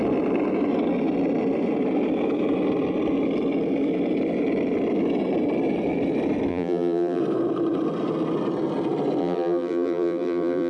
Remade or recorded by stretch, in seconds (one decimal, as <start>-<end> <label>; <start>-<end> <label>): 0.0-6.5 recorded; 6.5-7.2 remade; 7.2-9.2 recorded; 9.2-10.7 remade